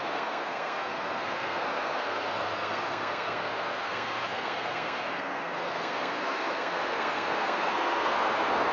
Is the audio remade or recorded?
remade